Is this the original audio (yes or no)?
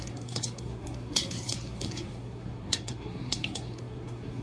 no